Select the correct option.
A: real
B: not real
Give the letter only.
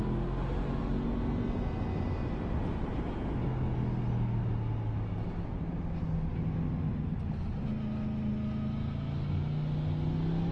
A